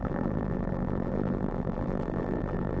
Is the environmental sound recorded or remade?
remade